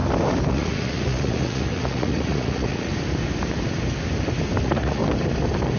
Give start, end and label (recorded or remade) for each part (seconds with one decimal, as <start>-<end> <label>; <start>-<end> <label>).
0.0-0.5 recorded; 0.5-2.9 remade; 2.9-4.6 recorded; 4.6-5.0 remade; 5.0-5.8 recorded